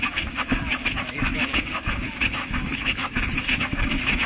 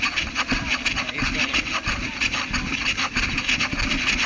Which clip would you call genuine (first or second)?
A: second